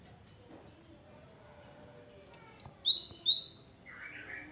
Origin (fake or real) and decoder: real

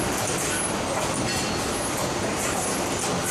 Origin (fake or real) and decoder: real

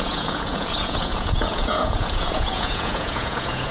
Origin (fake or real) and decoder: fake, vocoder, Vocos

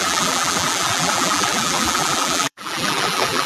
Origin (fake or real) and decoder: fake, vocoder, BigVGAN v2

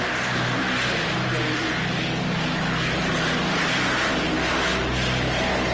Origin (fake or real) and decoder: real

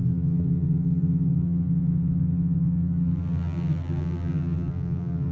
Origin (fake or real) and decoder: fake, vocoder, BigVGAN v2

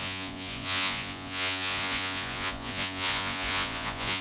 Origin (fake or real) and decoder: fake, vocoder, Vocos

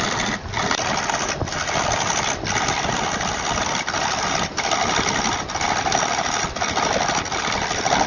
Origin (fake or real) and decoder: real